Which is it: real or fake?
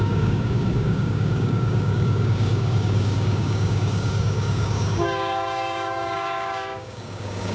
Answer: fake